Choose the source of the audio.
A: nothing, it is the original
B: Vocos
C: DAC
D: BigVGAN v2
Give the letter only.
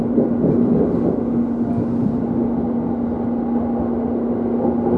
A